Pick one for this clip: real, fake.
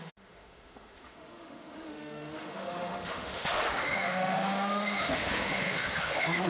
fake